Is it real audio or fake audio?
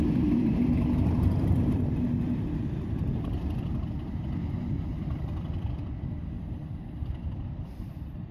fake